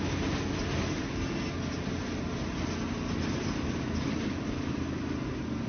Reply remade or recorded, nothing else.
recorded